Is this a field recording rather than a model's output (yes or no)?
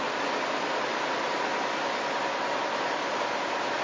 yes